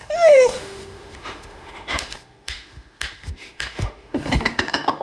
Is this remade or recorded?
remade